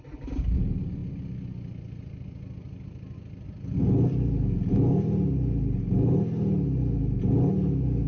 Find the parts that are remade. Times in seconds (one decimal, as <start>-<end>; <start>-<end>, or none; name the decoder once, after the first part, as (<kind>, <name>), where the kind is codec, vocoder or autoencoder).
none